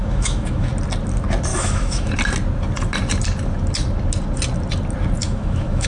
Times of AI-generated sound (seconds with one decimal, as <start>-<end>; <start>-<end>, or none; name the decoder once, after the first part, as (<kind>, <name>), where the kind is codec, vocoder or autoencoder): 0.0-0.7 (autoencoder, DAC-VAE); 1.5-2.1; 5.2-5.9